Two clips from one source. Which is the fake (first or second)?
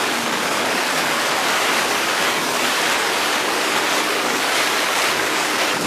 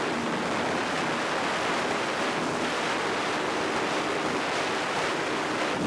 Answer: first